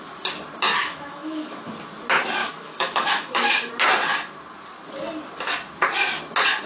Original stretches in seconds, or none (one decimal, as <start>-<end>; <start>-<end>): 0.0-0.8; 1.7-2.4; 3.7-6.7

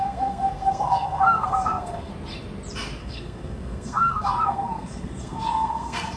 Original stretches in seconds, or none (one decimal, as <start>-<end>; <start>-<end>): 2.1-3.0